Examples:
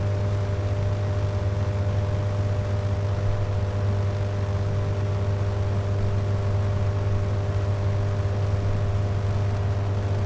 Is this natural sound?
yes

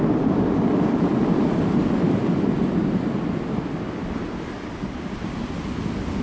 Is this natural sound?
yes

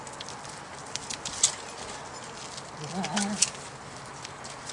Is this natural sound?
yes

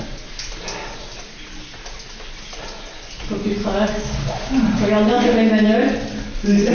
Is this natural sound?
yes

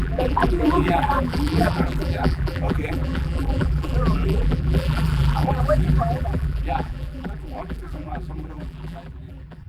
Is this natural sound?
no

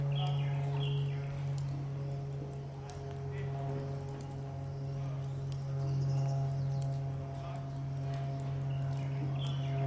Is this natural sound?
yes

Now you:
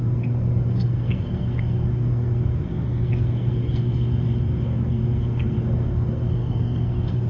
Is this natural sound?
no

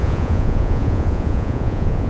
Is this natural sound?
no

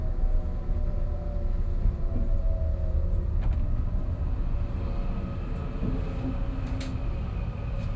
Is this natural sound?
yes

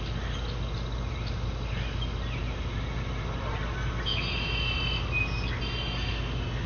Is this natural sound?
yes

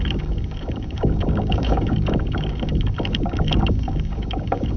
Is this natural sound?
no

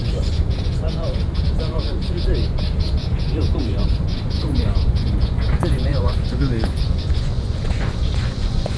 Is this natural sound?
no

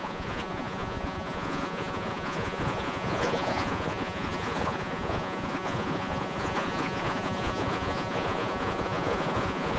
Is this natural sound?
no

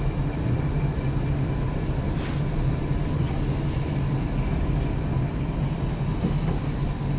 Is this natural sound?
yes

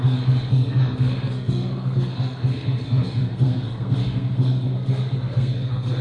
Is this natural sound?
no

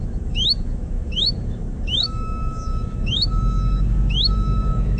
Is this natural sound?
no